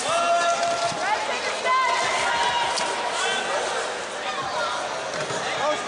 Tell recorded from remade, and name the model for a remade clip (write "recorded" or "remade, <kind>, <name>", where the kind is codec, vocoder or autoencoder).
recorded